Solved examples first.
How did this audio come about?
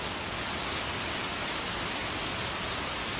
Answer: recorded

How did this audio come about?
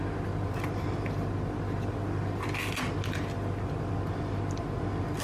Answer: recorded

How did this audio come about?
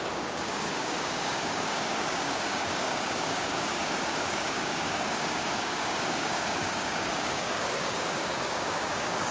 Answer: remade